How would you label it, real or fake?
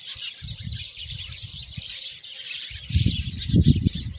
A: fake